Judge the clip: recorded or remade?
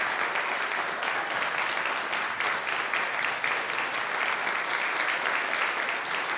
recorded